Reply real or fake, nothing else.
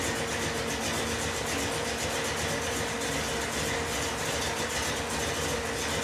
real